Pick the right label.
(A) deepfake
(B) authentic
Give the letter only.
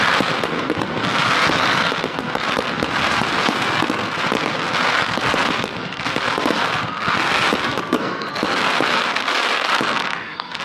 A